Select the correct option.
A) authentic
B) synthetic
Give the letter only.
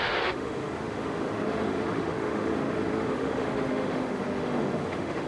B